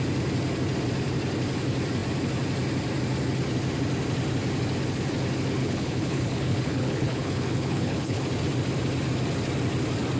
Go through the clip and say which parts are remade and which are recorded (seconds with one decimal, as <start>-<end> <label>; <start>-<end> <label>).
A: 0.0-5.6 recorded; 5.6-8.2 remade; 8.2-10.2 recorded